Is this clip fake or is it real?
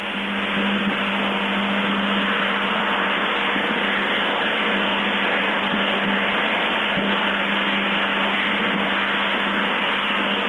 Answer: real